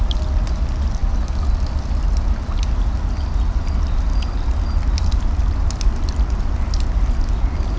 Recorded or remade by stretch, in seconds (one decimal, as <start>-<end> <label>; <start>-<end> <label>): 0.0-7.8 recorded